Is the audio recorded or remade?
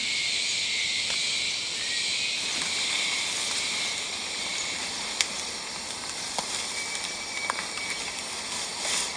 recorded